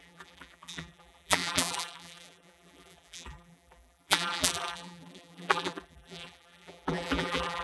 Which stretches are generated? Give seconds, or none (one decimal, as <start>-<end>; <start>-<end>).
0.0-7.6

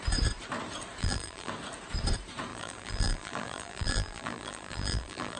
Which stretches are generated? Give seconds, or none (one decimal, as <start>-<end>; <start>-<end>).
1.0-1.5; 2.5-5.4

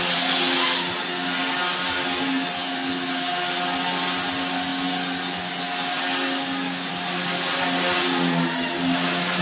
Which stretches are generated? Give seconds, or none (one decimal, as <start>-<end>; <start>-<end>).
none

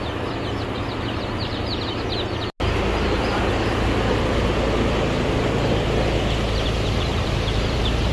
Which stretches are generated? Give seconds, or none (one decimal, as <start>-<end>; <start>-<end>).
7.1-8.1